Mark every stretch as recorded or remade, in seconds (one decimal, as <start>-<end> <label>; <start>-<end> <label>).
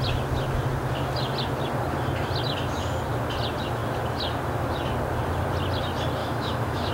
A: 0.0-6.2 recorded; 6.2-6.9 remade